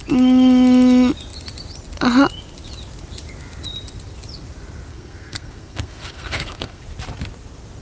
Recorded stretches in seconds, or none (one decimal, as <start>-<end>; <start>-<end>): 0.0-4.9; 6.8-7.8